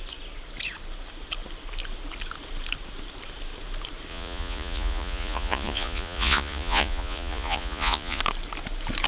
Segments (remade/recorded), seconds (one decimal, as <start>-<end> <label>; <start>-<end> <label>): 0.0-4.1 recorded; 4.1-8.2 remade; 8.2-9.1 recorded